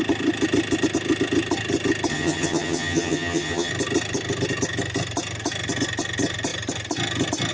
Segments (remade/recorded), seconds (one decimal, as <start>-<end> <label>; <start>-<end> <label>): 0.0-2.1 recorded; 2.1-3.7 remade; 3.7-7.5 recorded